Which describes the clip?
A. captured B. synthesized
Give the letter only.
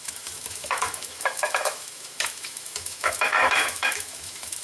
B